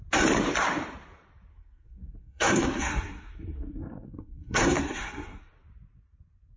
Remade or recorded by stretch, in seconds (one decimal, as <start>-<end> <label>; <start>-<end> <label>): 0.0-1.5 recorded; 1.5-5.5 remade; 5.5-6.6 recorded